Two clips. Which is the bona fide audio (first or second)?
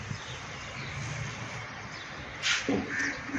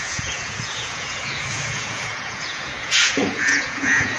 first